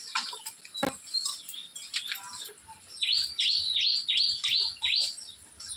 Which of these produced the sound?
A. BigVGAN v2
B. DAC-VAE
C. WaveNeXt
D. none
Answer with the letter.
D